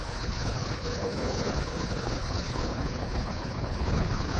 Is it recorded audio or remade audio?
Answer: remade